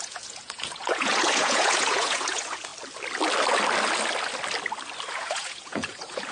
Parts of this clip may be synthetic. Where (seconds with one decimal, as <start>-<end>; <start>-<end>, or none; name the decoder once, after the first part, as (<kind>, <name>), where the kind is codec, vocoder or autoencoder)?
0.0-2.7 (vocoder, Vocos); 5.1-6.3